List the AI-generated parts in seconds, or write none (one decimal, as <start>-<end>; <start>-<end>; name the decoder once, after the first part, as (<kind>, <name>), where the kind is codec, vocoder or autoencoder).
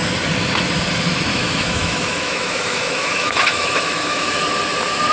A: 1.3-4.4 (autoencoder, DAC-VAE)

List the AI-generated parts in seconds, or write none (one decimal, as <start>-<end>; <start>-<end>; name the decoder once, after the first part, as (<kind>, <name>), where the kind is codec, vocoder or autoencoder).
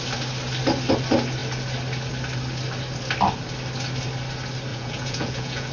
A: 4.7-5.7 (vocoder, Vocos)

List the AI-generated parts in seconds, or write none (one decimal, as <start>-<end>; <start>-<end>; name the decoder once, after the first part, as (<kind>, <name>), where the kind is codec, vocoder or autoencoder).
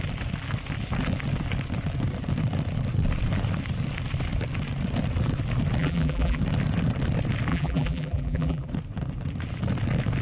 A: 5.8-6.4 (vocoder, BigVGAN v2); 7.5-8.7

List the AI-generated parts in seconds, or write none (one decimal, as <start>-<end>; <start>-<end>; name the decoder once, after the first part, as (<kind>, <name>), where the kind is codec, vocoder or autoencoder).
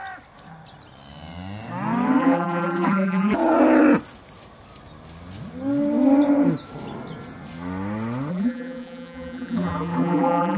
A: 2.2-3.4 (vocoder, BigVGAN v2); 8.3-10.6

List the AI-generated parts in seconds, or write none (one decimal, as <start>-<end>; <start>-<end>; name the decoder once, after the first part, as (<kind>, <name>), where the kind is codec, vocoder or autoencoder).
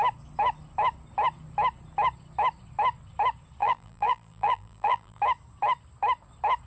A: 3.6-5.2 (vocoder, BigVGAN v2)